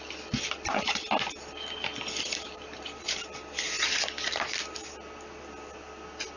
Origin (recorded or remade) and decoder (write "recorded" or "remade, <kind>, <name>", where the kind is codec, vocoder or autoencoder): recorded